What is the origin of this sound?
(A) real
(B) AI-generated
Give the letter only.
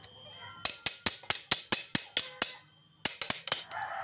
A